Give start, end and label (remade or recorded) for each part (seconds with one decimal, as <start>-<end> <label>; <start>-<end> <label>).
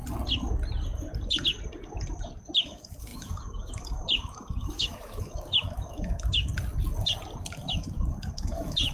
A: 0.0-2.6 recorded; 2.6-6.5 remade; 6.5-7.4 recorded; 7.4-8.9 remade